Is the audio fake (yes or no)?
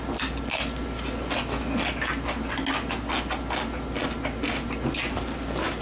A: no